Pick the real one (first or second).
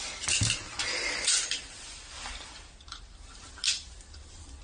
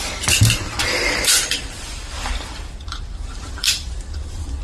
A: first